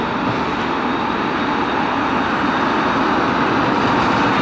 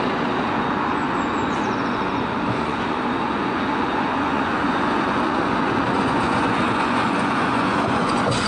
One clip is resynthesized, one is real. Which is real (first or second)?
first